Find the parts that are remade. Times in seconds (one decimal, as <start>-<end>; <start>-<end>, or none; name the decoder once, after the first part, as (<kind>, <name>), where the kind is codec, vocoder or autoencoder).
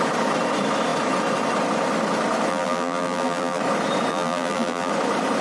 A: 2.5-3.6 (vocoder, BigVGAN v2); 4.1-4.9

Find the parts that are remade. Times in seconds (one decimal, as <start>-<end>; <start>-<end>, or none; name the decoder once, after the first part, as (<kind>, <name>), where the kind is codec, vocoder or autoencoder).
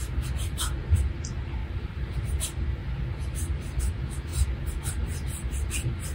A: 1.6-2.1 (vocoder, BigVGAN v2)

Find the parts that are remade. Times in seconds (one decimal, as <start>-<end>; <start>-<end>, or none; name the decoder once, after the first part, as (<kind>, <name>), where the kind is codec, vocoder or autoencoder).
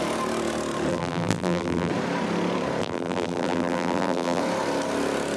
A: 0.9-1.9 (vocoder, BigVGAN v2); 2.8-4.4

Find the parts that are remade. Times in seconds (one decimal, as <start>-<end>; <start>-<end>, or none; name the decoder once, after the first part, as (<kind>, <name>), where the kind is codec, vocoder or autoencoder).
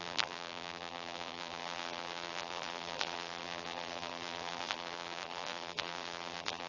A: 0.0-6.7 (vocoder, BigVGAN v2)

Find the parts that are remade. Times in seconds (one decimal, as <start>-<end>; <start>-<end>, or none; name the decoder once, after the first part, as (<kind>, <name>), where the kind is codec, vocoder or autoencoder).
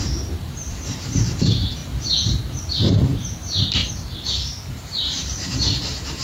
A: 0.0-1.8 (vocoder, BigVGAN v2); 2.6-3.8; 4.7-6.2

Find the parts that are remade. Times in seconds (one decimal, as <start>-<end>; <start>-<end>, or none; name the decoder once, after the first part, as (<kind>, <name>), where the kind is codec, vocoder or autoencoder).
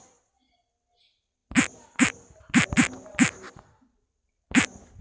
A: none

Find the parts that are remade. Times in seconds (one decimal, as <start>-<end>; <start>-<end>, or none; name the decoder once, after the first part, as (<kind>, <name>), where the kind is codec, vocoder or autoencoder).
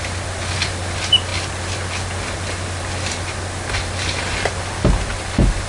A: none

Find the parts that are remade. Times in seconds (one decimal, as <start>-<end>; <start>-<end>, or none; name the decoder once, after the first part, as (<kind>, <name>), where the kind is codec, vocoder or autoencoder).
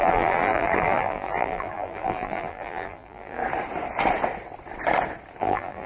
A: 0.0-3.4 (vocoder, BigVGAN v2); 5.4-5.9